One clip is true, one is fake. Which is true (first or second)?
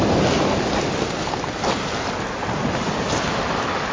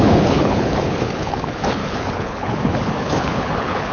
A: first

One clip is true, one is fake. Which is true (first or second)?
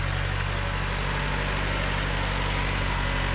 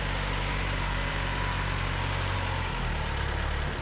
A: first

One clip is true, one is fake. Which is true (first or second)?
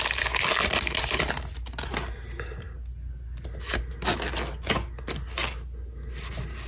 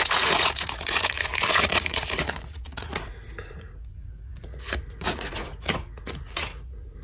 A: first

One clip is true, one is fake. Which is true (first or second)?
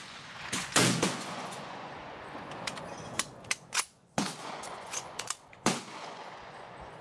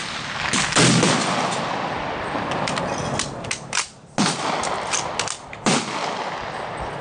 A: second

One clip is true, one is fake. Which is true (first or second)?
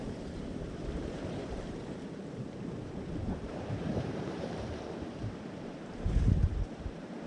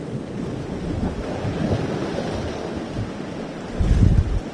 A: second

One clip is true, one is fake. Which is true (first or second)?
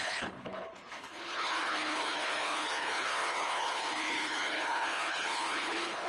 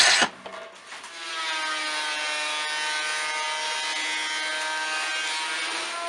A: second